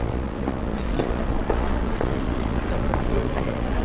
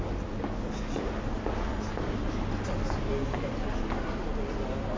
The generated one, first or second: first